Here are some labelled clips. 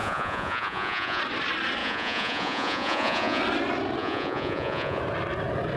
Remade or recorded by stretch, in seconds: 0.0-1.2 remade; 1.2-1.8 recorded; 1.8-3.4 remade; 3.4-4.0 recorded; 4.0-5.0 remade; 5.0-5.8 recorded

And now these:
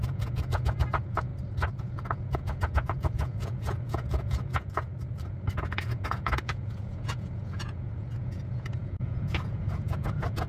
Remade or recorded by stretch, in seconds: 0.0-1.3 remade; 1.3-1.8 recorded; 1.8-4.9 remade; 4.9-5.5 recorded; 5.5-10.5 remade

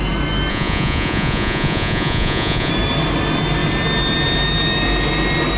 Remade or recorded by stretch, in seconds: 0.0-0.5 recorded; 0.5-2.7 remade; 2.7-5.6 recorded

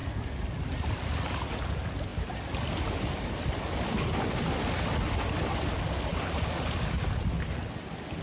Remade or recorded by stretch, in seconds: 0.0-8.2 recorded